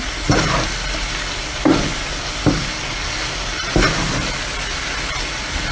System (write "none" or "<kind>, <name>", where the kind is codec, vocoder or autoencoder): none